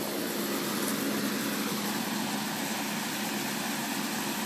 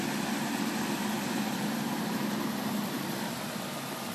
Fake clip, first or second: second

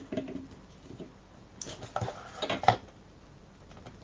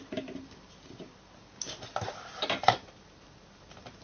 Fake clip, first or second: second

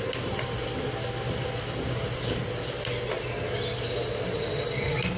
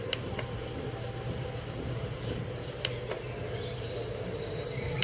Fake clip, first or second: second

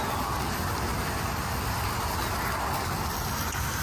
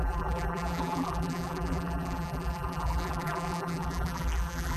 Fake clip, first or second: second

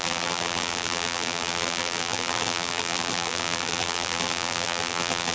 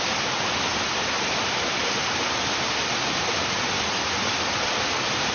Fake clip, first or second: first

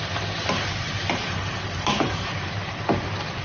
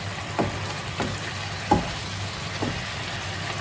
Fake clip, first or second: first